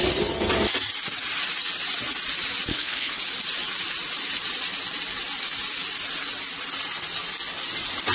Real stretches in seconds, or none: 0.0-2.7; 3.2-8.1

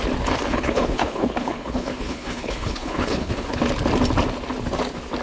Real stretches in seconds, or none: 0.0-0.5; 3.6-5.2

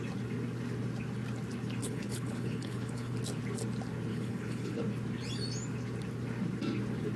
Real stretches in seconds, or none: 0.0-1.8; 3.2-4.1; 4.8-7.2